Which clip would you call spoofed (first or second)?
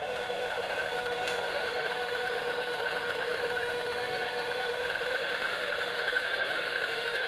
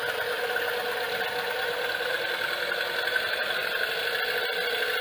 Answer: first